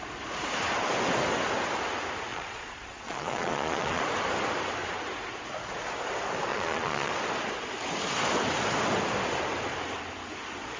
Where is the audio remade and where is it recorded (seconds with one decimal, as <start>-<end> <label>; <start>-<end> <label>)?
0.0-2.3 recorded; 2.3-4.0 remade; 4.0-6.5 recorded; 6.5-7.1 remade; 7.1-10.8 recorded